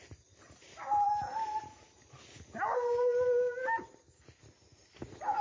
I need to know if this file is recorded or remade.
recorded